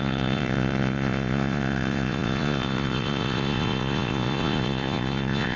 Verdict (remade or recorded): remade